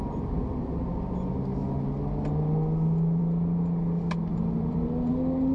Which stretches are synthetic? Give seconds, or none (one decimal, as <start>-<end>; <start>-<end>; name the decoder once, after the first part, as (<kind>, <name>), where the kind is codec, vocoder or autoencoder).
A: 4.3-5.1 (vocoder, BigVGAN v2)